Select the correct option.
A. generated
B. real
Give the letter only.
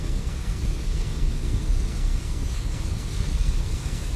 A